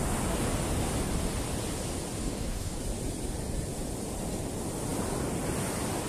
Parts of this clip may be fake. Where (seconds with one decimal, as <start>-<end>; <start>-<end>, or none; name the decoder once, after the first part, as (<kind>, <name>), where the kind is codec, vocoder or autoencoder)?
2.2-2.8 (codec, DAC)